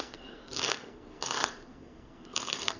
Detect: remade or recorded remade